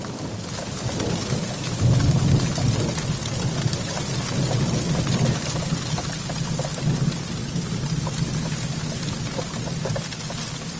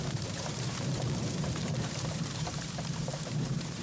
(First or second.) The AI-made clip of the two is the second